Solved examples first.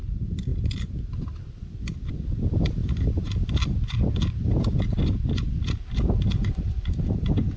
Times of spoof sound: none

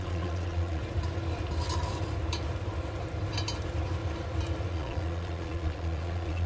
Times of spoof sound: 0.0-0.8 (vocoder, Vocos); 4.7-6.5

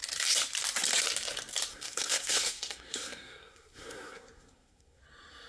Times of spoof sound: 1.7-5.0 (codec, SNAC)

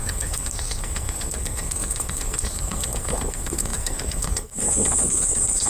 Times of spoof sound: 0.0-5.7 (codec, SNAC)

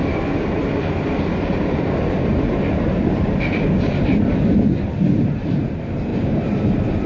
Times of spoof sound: 0.0-4.3 (vocoder, BigVGAN v2); 6.1-7.1

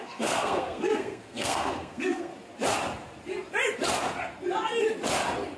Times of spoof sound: 0.0-2.3 (codec, SNAC)

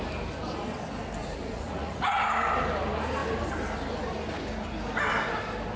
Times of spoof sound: 1.2-2.2 (vocoder, Vocos)